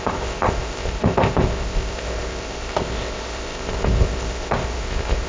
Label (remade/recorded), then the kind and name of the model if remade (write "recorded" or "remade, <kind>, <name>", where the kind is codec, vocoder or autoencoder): remade, codec, ZipCodec